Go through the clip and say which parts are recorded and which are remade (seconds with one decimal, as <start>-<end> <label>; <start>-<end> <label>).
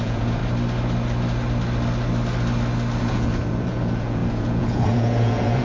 0.0-0.4 remade; 0.4-3.0 recorded; 3.0-5.6 remade